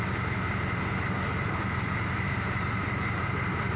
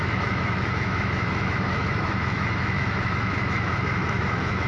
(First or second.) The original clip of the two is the first